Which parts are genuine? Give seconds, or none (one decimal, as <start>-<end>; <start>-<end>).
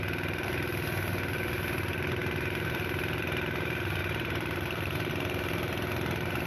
0.0-4.0; 5.1-6.5